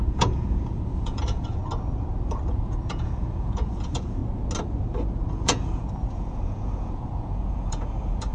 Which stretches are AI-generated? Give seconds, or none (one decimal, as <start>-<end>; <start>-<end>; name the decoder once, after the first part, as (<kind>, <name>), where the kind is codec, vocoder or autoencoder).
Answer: 0.0-1.6 (vocoder, Vocos); 2.5-4.2; 5.3-8.3